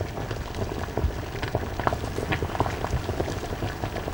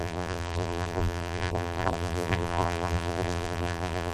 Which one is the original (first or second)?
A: first